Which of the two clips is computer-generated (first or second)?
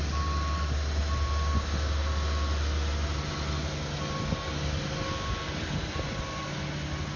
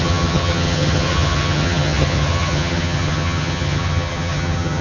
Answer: second